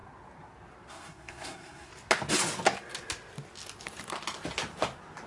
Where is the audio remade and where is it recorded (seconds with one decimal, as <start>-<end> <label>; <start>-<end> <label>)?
0.0-0.9 recorded; 0.9-1.9 remade; 1.9-5.3 recorded